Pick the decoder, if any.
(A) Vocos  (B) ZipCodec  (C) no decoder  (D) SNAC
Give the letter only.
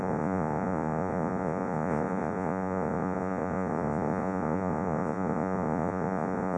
A